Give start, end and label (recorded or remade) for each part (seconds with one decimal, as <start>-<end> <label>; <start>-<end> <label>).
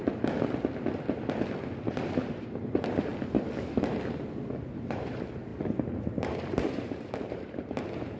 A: 0.0-1.9 recorded; 1.9-3.1 remade; 3.1-4.7 recorded; 4.7-5.5 remade; 5.5-6.2 recorded; 6.2-8.2 remade